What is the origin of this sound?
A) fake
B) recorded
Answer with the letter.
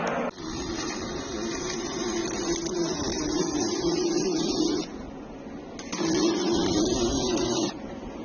B